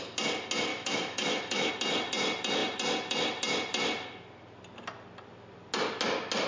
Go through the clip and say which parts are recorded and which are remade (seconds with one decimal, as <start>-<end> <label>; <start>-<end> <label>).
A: 0.0-0.7 recorded; 0.7-1.7 remade; 1.7-6.5 recorded